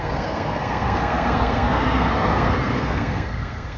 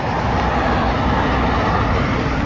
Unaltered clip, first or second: second